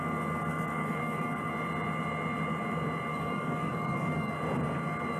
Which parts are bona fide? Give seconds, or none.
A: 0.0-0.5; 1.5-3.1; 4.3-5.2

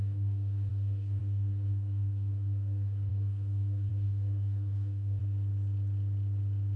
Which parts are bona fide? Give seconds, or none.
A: 5.2-6.8

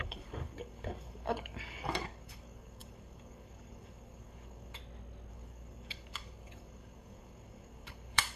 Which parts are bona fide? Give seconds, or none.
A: 4.8-5.3

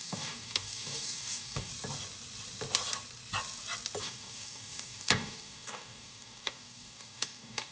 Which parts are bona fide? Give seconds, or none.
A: 1.7-4.0

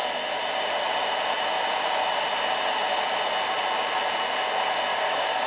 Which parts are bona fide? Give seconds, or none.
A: 0.0-4.9

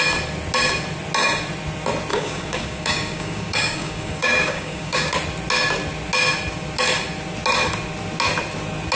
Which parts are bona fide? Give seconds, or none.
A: 0.0-2.1; 5.1-9.0

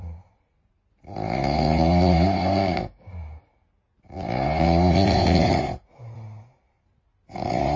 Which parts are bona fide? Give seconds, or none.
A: 0.0-2.6; 3.1-7.8